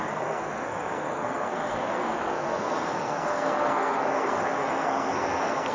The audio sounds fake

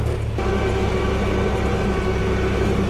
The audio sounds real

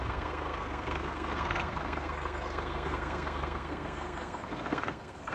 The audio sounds fake